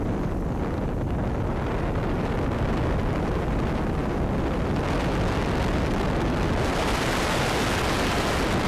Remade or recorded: recorded